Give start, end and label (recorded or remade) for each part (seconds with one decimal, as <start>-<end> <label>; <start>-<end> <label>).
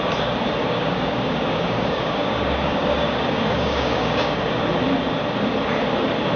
0.0-0.6 recorded; 0.6-4.4 remade; 4.4-6.4 recorded